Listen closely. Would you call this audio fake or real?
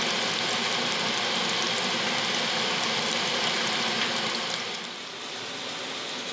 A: real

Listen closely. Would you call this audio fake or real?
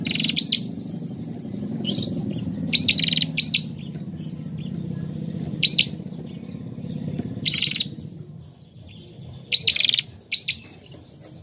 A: real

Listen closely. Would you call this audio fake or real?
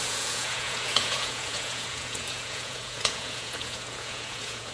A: fake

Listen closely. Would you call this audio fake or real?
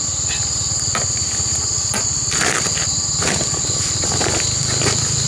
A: real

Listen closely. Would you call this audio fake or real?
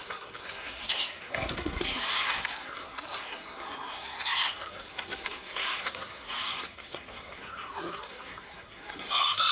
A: fake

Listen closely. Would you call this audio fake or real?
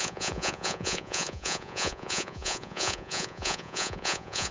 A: fake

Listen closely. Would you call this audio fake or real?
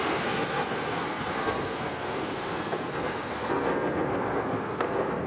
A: fake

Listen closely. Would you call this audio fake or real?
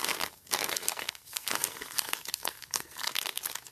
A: fake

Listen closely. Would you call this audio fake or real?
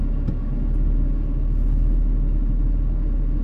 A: real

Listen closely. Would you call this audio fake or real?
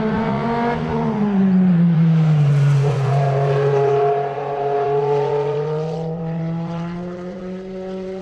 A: fake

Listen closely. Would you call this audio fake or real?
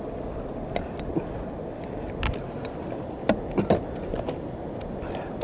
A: real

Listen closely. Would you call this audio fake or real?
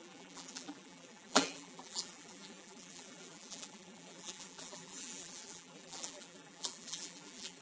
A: fake